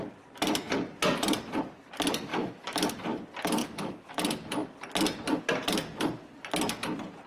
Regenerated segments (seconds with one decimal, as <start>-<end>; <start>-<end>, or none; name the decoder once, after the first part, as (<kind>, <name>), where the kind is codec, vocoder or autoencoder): 2.3-2.9 (autoencoder, DAC-VAE); 3.6-4.1